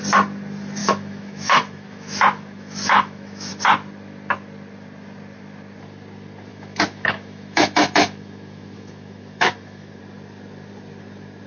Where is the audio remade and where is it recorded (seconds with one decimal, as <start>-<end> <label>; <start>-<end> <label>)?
0.0-0.8 recorded; 0.8-3.5 remade; 3.5-6.5 recorded; 6.5-10.0 remade; 10.0-11.5 recorded